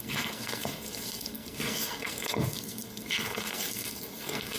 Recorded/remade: remade